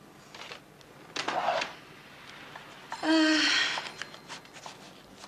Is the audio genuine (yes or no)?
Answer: yes